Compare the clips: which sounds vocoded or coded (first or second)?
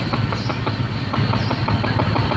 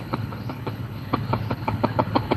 second